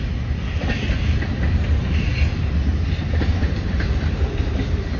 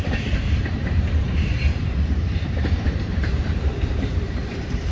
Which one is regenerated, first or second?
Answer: second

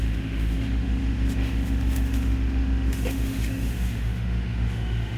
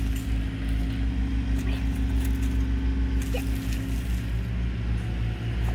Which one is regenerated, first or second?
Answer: first